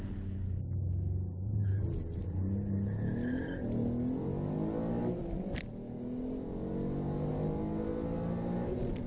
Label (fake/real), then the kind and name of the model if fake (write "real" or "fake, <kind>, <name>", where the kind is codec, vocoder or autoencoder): real